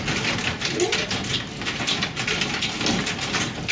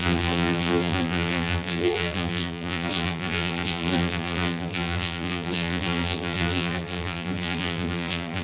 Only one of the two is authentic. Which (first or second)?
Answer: first